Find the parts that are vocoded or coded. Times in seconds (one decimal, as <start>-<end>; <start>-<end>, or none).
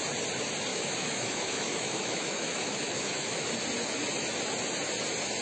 0.7-3.5